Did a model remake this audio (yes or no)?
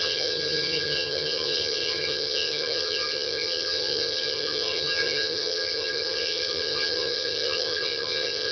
yes